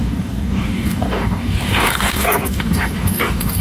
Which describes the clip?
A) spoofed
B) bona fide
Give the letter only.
A